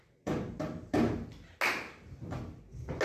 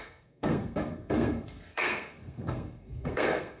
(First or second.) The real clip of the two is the first